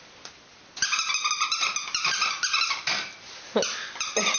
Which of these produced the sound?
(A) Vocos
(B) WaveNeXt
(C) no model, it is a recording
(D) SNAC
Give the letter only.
C